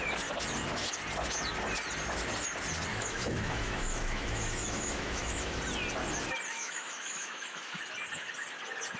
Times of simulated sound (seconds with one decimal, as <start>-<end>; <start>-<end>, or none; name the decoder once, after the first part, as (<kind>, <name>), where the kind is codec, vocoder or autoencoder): 2.9-5.6 (autoencoder, DAC-VAE); 6.5-7.8

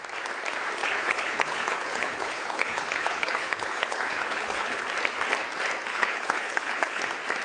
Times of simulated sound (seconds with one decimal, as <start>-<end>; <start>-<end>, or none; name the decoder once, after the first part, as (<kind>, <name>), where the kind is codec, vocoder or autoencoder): 0.8-4.8 (codec, HILCodec); 5.9-7.0

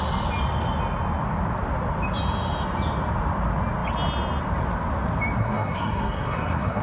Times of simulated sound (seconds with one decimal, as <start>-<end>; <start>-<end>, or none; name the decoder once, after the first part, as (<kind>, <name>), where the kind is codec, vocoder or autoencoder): 5.4-6.8 (codec, SNAC)